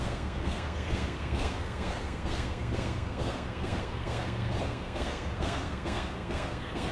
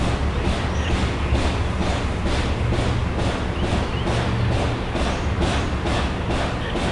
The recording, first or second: second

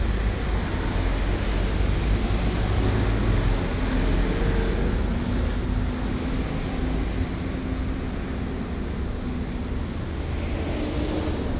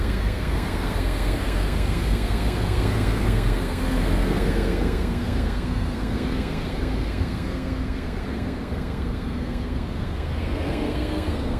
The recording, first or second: first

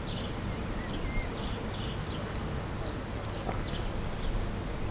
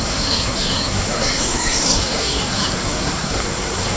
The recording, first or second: first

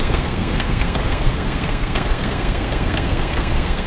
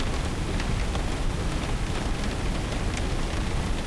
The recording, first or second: second